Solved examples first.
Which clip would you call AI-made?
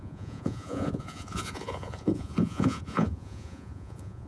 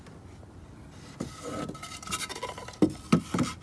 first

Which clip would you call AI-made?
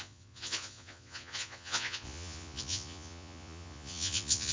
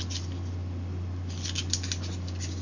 first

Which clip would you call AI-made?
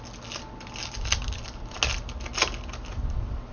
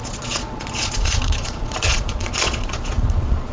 second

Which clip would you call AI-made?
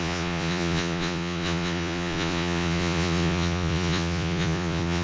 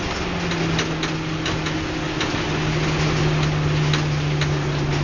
first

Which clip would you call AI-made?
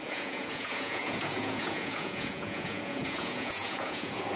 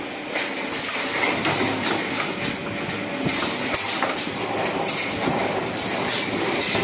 first